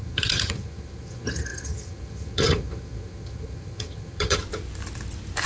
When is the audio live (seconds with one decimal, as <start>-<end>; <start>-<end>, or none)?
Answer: 4.4-5.5